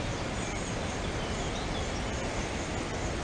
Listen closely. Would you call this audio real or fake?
real